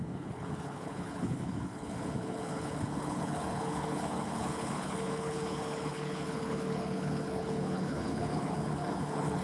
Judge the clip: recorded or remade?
remade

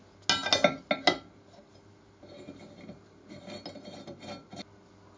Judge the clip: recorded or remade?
recorded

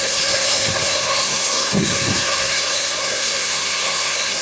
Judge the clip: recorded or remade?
remade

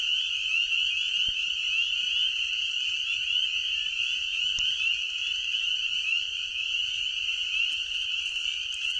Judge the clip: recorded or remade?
recorded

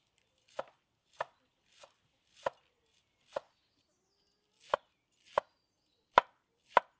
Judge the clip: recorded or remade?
recorded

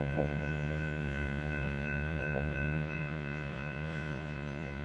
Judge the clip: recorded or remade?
remade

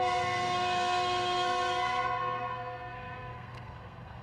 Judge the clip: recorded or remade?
remade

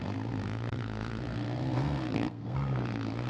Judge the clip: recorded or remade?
remade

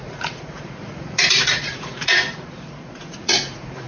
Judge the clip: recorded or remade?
remade